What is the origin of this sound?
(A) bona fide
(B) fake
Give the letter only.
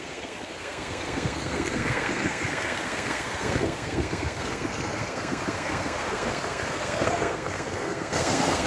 B